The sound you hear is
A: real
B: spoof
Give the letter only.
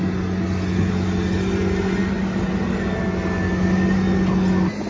A